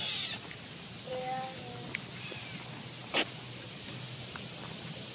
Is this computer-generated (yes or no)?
no